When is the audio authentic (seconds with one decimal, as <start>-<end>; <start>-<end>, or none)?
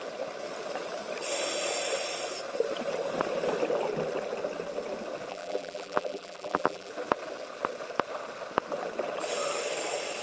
0.0-5.3; 6.9-10.2